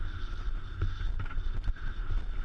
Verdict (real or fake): real